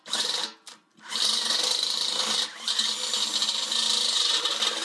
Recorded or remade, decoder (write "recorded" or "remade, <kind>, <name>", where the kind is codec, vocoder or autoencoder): recorded